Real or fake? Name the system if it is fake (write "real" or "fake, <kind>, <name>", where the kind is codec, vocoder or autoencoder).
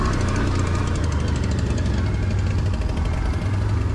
real